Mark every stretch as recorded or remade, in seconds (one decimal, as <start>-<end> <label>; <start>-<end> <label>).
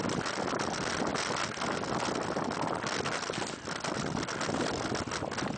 0.0-5.6 recorded